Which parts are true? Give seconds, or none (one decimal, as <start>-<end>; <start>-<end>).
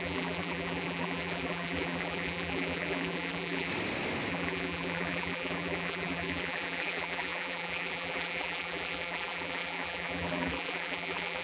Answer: 3.7-4.3